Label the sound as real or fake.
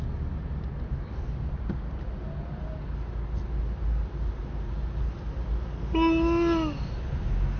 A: real